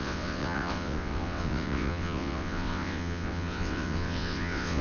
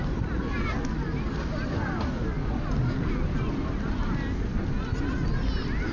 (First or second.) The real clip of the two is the second